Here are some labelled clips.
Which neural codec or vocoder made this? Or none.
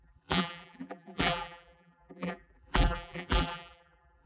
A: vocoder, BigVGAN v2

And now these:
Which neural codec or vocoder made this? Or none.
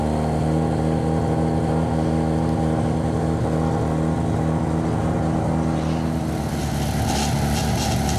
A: none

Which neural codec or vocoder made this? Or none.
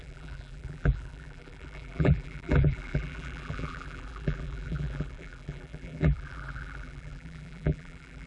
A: vocoder, BigVGAN v2